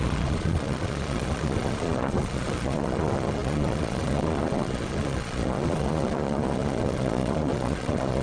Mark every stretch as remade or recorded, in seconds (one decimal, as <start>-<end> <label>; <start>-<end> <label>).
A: 0.0-8.2 remade